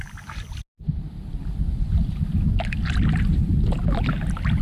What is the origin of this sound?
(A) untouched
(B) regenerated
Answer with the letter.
A